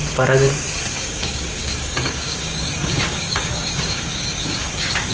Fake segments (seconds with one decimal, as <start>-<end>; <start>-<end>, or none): 0.9-5.1